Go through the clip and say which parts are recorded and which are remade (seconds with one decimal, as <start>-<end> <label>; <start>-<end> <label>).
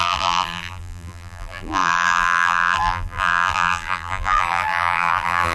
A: 0.0-5.5 remade